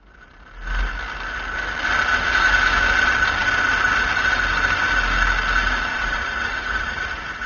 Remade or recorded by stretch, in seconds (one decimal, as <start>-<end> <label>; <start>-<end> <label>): 0.0-5.9 recorded; 5.9-6.9 remade; 6.9-7.5 recorded